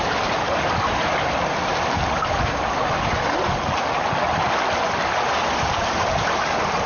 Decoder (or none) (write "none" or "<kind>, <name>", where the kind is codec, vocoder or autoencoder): none